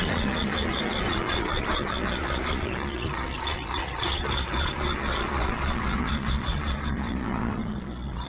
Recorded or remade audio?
remade